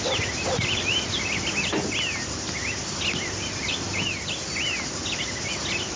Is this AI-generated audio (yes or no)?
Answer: no